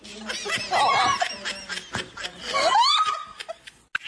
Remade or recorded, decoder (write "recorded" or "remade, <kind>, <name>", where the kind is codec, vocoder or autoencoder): recorded